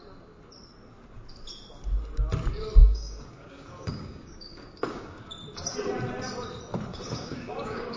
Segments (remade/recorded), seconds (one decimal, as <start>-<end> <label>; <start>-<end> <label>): 0.0-2.8 recorded; 2.8-5.3 remade; 5.3-6.9 recorded; 6.9-8.0 remade